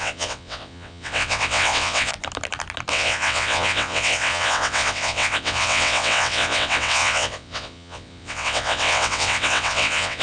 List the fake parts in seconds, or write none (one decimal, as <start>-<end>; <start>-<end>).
0.0-2.1; 2.9-10.2